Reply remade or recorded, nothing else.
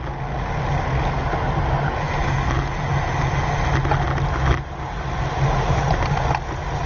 recorded